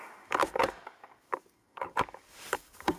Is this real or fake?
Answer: fake